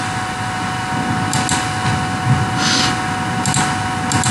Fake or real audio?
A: real